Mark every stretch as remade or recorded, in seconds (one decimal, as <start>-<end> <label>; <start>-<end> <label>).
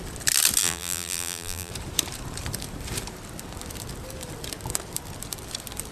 0.0-0.6 recorded; 0.6-1.7 remade; 1.7-5.9 recorded